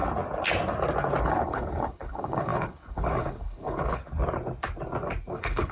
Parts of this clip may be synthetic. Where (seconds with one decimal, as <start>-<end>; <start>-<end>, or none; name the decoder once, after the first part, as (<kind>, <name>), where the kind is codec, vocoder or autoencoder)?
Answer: 1.2-4.0 (codec, HILCodec); 5.3-5.7